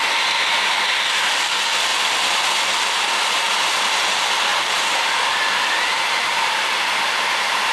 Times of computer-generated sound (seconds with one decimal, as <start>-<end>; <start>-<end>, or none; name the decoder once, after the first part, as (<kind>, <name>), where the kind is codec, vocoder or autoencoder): 1.9-2.5 (vocoder, BigVGAN v2); 4.5-5.1; 5.9-7.7